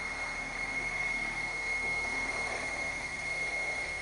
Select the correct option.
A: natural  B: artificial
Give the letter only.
B